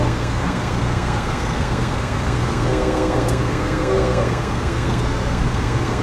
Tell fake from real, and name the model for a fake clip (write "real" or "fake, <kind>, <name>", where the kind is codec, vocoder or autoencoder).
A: fake, codec, SNAC